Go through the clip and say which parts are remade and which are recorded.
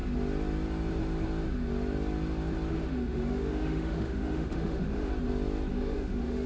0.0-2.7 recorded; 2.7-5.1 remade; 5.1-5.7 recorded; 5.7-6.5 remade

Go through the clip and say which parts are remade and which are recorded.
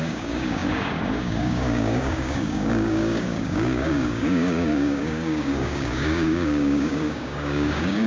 0.0-8.1 remade